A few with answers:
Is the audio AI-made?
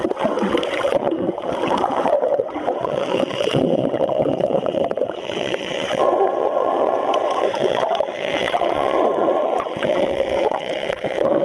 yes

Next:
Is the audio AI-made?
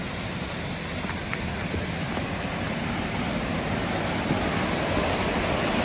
no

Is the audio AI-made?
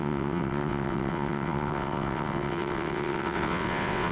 yes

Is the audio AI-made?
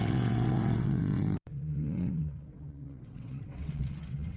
yes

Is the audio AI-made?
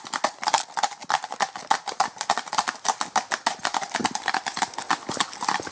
no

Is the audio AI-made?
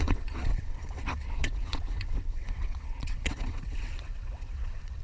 yes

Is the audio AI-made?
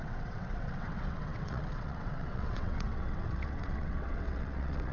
yes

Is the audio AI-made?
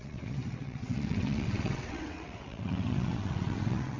yes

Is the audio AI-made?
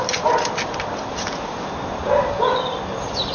no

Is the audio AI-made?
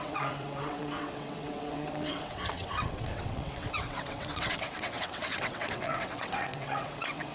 yes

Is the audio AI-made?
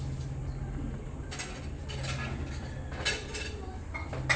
no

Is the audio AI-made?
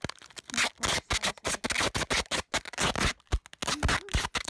no